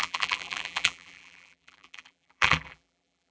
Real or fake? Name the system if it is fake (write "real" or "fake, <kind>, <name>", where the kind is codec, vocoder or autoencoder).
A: fake, vocoder, BigVGAN v2